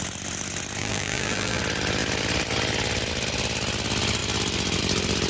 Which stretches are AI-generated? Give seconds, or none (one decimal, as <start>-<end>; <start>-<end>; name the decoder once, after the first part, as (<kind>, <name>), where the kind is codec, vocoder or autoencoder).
0.8-1.6 (vocoder, BigVGAN v2)